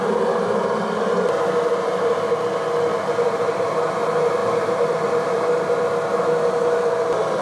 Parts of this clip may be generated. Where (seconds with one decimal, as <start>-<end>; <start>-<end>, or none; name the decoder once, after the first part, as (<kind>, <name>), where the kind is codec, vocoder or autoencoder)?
2.9-3.9 (vocoder, BigVGAN v2); 4.4-5.8